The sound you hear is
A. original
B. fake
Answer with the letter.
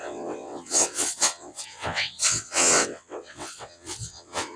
B